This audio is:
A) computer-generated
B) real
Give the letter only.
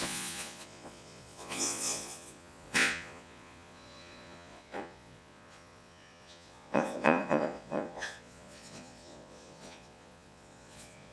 A